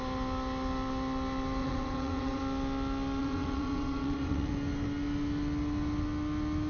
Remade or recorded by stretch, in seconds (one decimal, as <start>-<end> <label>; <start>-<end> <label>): 0.0-1.6 recorded; 1.6-2.4 remade; 2.4-3.2 recorded; 3.2-4.5 remade; 4.5-6.7 recorded